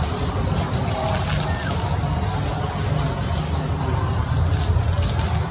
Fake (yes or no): no